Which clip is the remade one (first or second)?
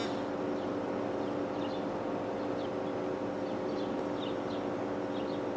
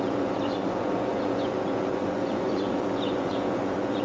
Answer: second